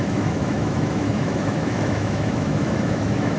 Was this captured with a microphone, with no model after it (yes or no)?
no